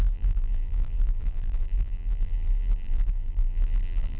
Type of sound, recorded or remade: remade